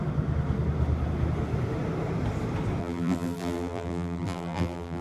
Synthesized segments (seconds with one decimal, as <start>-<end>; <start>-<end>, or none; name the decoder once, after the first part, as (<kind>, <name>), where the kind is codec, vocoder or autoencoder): 2.8-5.0 (vocoder, BigVGAN v2)